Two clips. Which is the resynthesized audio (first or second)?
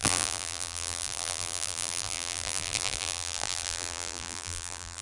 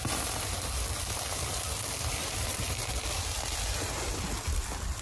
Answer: first